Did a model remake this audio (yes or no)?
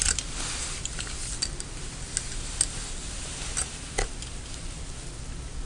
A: no